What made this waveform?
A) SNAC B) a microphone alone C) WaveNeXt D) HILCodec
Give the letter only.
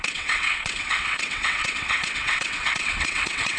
C